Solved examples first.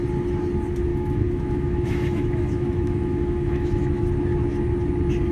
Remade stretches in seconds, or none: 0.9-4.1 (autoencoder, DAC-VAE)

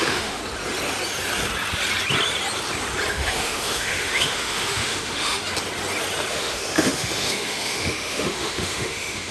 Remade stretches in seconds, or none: 0.0-0.4 (autoencoder, DAC-VAE); 3.1-5.4; 6.3-9.3

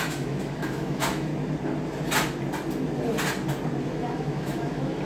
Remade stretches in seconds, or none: 0.0-1.3 (autoencoder, DAC-VAE); 3.8-5.0

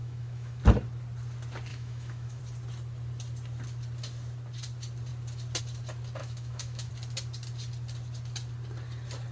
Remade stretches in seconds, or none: 0.0-0.6 (autoencoder, DAC-VAE); 1.7-2.4; 6.2-6.9